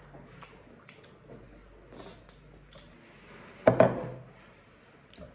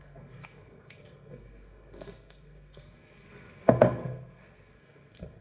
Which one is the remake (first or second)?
second